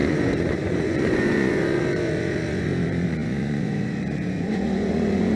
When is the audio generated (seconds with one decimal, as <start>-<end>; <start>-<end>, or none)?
0.0-5.4